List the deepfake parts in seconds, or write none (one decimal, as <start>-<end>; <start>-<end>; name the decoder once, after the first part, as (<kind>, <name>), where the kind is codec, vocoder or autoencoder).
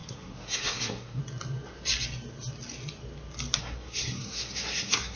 0.0-1.2 (codec, SNAC); 3.6-5.2